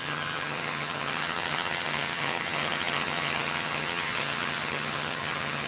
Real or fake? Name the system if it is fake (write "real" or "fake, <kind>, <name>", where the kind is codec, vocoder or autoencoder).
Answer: fake, vocoder, HiFi-GAN